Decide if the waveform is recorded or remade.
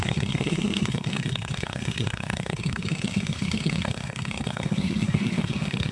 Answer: remade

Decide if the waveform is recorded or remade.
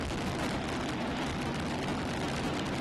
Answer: recorded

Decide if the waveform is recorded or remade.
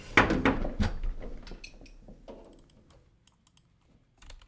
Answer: recorded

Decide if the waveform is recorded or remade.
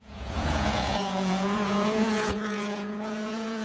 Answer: remade